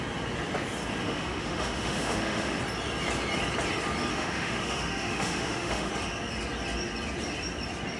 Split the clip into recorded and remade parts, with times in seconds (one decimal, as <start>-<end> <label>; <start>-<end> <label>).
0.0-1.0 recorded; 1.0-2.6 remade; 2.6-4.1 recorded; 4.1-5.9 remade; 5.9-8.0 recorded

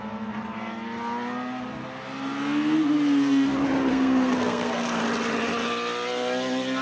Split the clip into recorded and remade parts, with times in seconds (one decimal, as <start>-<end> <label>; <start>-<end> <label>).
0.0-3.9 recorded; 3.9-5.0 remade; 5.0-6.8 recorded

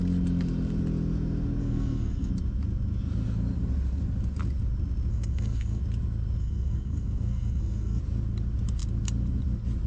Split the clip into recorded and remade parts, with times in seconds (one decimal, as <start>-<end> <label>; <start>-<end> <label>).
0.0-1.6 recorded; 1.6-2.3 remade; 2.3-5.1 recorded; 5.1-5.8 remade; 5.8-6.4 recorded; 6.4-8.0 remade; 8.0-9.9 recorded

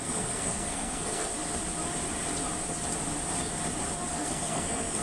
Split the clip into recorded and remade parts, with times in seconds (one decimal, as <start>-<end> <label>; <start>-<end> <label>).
0.0-1.3 remade; 1.3-4.1 recorded; 4.1-5.0 remade